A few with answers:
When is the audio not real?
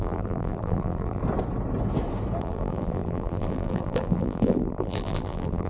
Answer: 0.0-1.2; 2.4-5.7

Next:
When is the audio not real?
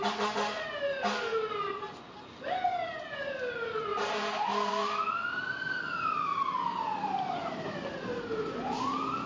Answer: 3.9-4.8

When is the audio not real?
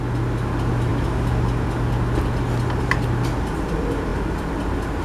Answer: none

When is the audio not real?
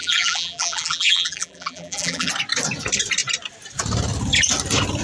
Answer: 0.0-2.3